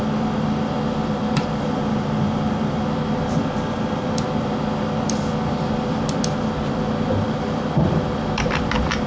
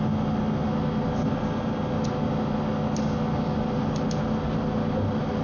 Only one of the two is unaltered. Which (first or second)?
second